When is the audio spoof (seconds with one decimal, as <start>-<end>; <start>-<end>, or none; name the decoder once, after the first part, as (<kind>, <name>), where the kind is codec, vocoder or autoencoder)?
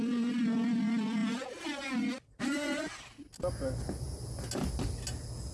none